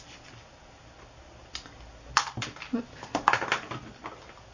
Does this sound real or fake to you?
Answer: real